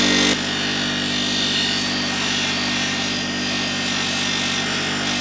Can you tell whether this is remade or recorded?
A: recorded